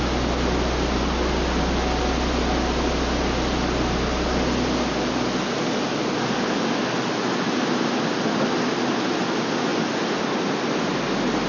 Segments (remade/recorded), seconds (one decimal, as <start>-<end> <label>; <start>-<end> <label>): 0.0-11.5 recorded